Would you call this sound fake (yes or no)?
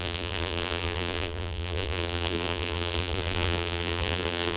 yes